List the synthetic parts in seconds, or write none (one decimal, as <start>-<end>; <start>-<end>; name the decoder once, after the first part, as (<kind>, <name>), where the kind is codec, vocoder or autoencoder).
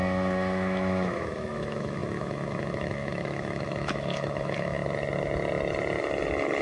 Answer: 0.0-4.8 (autoencoder, DAC-VAE)